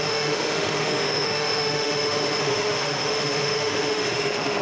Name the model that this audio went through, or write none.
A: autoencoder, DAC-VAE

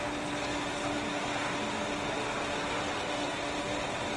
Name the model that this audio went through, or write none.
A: none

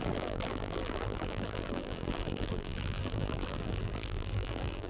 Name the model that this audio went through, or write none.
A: vocoder, BigVGAN v2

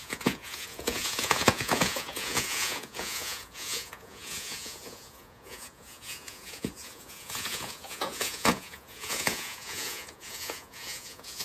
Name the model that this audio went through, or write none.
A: vocoder, Vocos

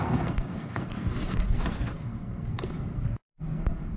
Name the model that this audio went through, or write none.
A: codec, SNAC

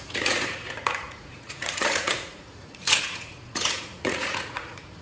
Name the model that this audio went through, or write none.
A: vocoder, Vocos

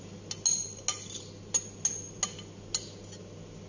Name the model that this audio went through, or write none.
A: none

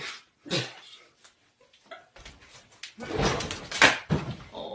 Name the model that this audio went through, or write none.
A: none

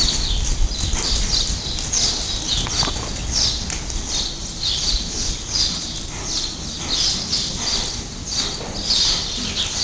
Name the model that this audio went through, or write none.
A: none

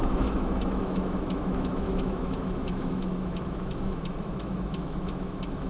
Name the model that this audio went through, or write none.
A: autoencoder, DAC-VAE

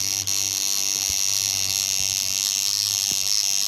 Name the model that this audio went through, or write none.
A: none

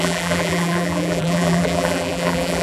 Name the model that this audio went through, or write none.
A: vocoder, BigVGAN v2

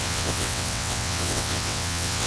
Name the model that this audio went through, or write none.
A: vocoder, WaveNeXt